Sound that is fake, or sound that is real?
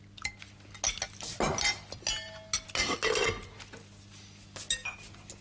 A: real